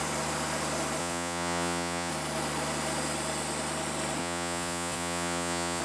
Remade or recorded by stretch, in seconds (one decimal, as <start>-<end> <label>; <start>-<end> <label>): 0.0-1.0 recorded; 1.0-2.1 remade; 2.1-4.2 recorded; 4.2-5.8 remade